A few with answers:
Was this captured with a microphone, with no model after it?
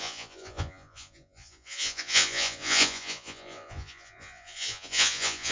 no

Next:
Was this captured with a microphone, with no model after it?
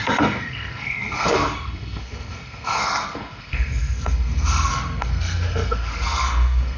no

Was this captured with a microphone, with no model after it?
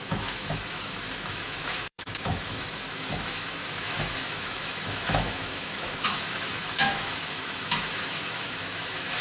no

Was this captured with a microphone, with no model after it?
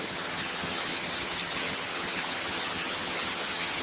no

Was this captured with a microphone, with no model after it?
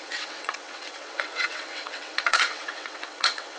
no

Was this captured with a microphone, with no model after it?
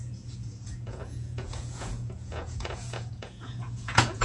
no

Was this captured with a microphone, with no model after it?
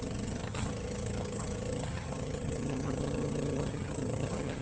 no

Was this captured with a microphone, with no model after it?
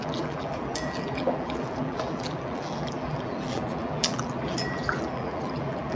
no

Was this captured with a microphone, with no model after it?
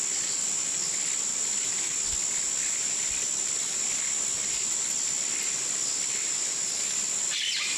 yes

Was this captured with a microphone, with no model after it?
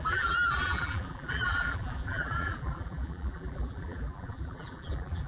no